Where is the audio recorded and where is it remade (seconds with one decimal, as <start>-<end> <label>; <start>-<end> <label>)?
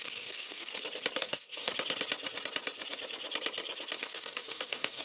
0.0-0.7 remade; 0.7-1.2 recorded; 1.2-1.7 remade; 1.7-4.0 recorded; 4.0-5.0 remade